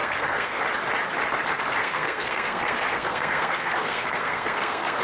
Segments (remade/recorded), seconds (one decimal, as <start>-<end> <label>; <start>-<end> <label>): 0.0-0.6 remade; 0.6-1.8 recorded; 1.8-5.0 remade